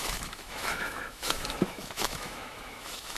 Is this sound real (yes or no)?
no